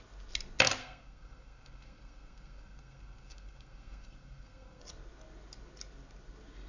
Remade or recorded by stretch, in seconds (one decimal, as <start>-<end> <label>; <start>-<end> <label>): 0.0-0.8 recorded; 0.8-4.8 remade; 4.8-6.7 recorded